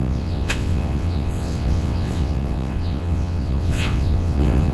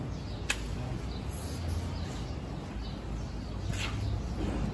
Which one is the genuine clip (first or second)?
second